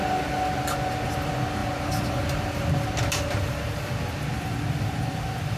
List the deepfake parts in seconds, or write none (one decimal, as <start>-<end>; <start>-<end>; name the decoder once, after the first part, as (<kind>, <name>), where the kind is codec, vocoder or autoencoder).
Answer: none